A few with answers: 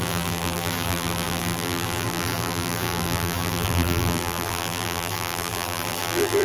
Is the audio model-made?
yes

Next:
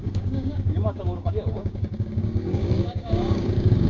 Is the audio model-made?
yes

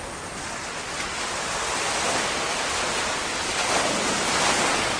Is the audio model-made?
no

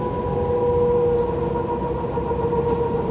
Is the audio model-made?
no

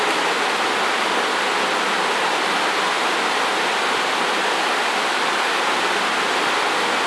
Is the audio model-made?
no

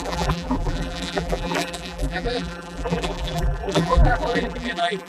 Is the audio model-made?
yes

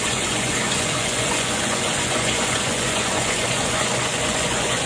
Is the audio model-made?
yes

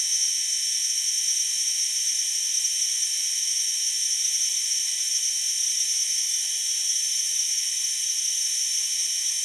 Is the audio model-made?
yes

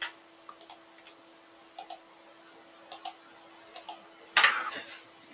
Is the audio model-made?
no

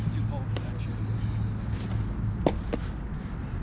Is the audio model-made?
no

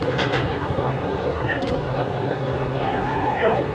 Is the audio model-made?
yes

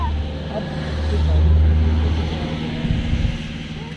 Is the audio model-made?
no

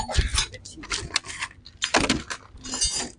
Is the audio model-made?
no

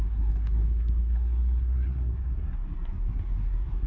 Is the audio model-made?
yes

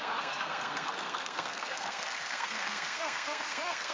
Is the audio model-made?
yes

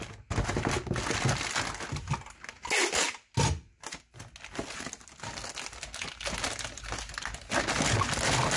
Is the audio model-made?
no